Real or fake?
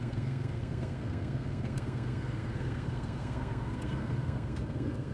fake